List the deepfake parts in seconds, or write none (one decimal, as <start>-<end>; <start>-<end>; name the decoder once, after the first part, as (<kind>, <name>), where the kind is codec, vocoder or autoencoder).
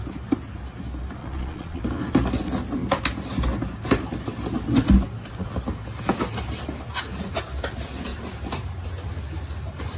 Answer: 1.2-1.8 (vocoder, Vocos)